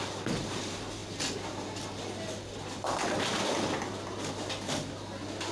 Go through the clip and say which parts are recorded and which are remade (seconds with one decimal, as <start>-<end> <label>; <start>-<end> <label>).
0.0-5.5 recorded